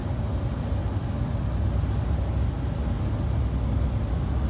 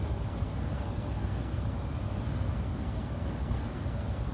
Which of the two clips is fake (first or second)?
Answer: second